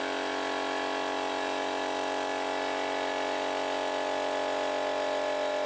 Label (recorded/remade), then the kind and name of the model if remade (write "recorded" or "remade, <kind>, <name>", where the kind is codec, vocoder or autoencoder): recorded